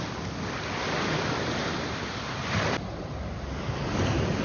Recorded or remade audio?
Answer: recorded